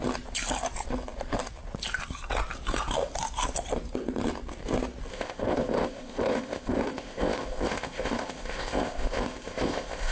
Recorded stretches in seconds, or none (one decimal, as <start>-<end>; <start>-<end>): 0.0-5.1